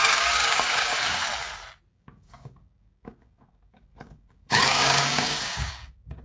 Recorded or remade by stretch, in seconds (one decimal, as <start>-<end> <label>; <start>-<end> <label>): 0.0-1.3 remade; 1.3-1.9 recorded; 1.9-6.2 remade